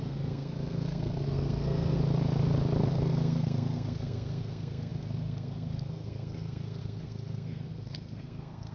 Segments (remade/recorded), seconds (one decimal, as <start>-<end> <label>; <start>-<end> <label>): 0.0-2.0 remade; 2.0-2.8 recorded; 2.8-8.7 remade